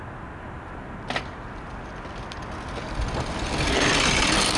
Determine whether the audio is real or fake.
real